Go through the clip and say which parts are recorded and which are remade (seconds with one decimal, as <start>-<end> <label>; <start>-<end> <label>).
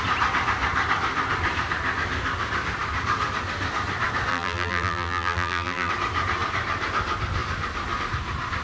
0.0-4.3 recorded; 4.3-5.9 remade; 5.9-8.6 recorded